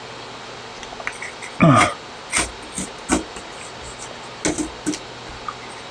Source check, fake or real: real